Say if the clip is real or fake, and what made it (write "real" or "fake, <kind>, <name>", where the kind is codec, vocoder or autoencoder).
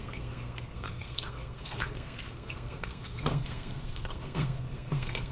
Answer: fake, codec, SNAC